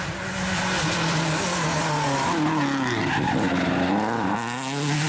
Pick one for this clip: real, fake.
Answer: real